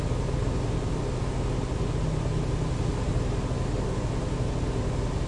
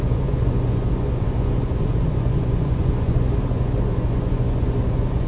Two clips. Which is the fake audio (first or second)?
second